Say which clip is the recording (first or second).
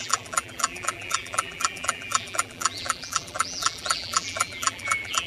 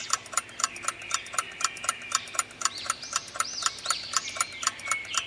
second